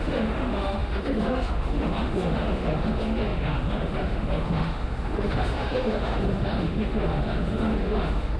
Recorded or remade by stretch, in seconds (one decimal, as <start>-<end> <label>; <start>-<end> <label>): 0.0-8.4 remade